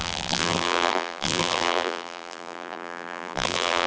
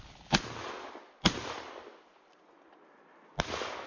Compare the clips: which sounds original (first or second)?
second